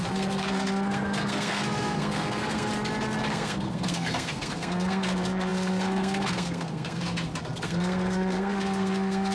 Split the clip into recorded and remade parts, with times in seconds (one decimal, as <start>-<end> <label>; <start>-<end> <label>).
0.0-2.7 remade; 2.7-3.3 recorded; 3.3-9.3 remade